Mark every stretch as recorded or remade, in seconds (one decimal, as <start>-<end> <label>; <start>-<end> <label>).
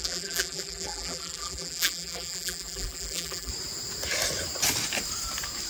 0.0-3.5 remade; 3.5-5.7 recorded